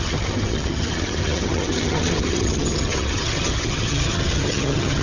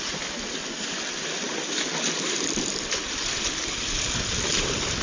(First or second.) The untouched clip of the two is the second